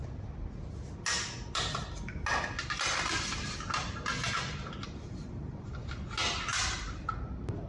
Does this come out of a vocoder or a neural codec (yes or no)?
no